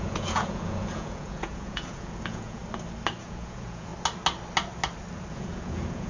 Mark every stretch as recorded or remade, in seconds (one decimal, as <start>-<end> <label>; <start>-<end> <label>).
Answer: 0.0-2.6 remade; 2.6-3.2 recorded; 3.2-3.9 remade; 3.9-5.3 recorded; 5.3-6.1 remade